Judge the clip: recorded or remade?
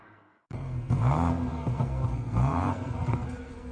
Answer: remade